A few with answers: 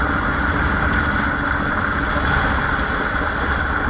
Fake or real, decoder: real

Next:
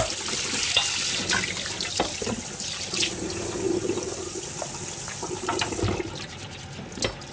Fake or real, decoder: real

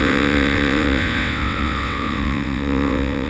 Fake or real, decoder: fake, vocoder, WaveNeXt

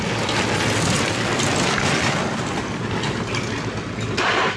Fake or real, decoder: real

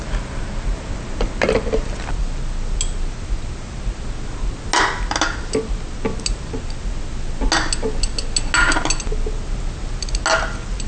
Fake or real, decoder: real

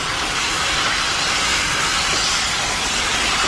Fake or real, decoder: real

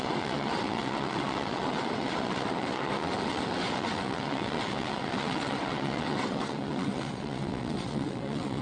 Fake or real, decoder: fake, vocoder, WaveNeXt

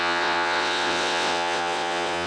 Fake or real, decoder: fake, vocoder, WaveNeXt